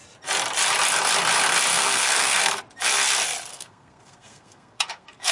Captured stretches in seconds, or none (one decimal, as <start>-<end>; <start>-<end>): 0.0-1.7; 2.6-3.5